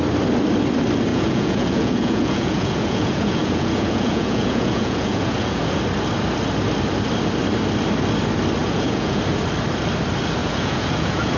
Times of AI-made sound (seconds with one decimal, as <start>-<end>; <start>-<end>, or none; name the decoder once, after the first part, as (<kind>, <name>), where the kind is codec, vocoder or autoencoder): 1.1-5.8 (vocoder, Vocos); 8.6-9.2; 10.4-11.4